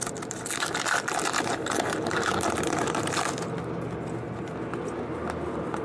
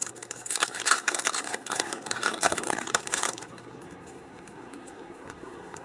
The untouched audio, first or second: first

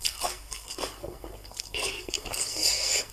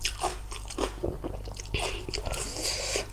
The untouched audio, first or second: second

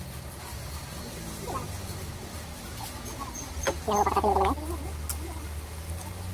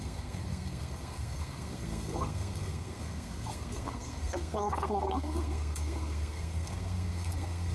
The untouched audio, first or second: first